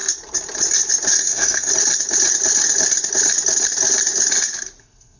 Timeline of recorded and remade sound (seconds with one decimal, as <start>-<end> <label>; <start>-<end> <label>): 0.0-1.1 recorded; 1.1-1.7 remade; 1.7-4.8 recorded; 4.8-5.2 remade